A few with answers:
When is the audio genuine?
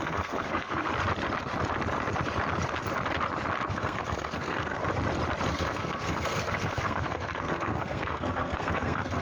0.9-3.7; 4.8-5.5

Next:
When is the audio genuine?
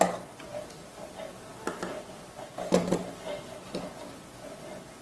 0.0-5.0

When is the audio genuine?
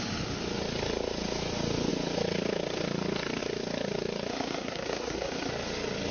0.0-4.3; 5.5-6.1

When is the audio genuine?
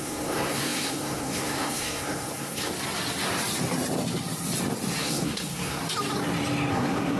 2.7-5.0; 5.8-6.7